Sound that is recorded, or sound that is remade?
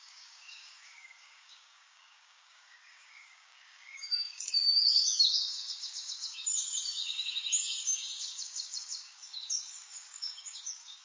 remade